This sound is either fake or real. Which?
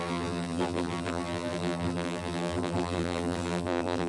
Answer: fake